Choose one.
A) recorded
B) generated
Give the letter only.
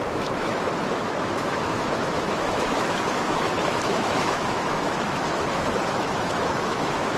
B